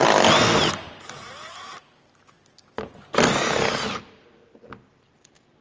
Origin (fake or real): real